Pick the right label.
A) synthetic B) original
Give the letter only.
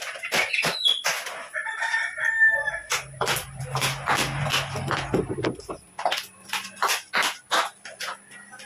B